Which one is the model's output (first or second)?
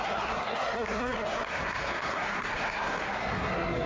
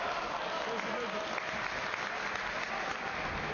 first